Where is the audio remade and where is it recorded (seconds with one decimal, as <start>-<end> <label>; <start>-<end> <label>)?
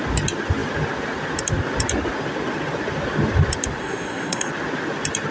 0.0-3.8 recorded; 3.8-4.5 remade; 4.5-5.3 recorded